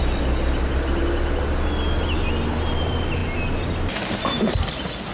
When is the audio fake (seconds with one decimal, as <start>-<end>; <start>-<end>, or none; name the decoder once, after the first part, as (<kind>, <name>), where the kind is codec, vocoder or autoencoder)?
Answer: none